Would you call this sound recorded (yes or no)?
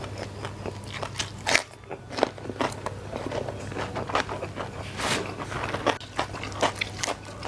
yes